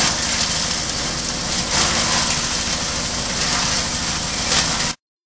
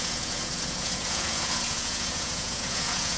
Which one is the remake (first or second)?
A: second